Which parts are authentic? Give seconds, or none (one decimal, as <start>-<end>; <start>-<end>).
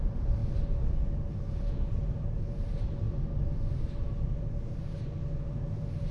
0.0-6.1